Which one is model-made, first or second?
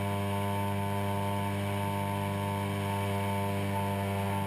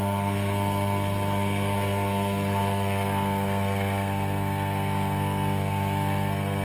second